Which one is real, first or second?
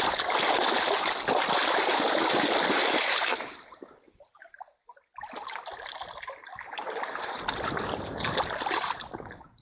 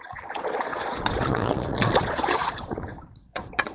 first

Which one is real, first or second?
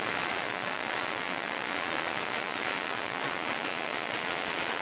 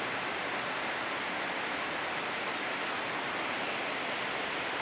second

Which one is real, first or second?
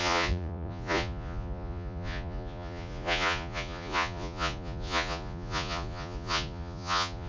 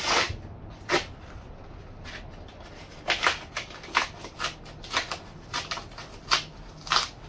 second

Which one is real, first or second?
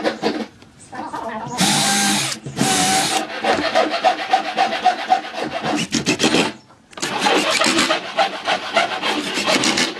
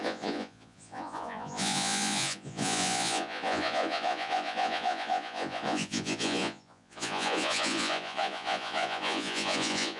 first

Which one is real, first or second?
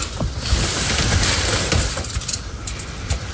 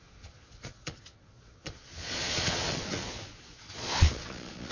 first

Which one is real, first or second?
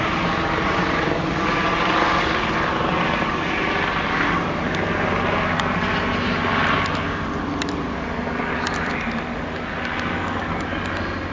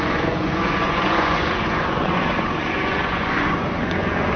first